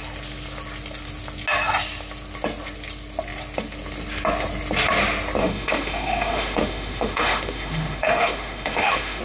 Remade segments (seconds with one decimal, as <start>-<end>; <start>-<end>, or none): 5.4-9.2